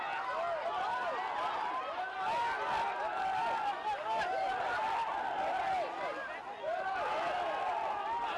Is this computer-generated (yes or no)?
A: no